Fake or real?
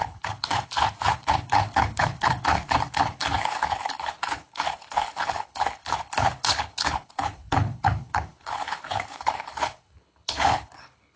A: fake